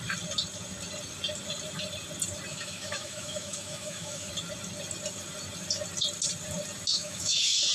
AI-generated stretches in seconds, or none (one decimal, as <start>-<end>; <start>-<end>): 2.5-4.3; 6.9-7.7